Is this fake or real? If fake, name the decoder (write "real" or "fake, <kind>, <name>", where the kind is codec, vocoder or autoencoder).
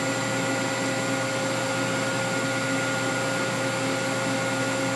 real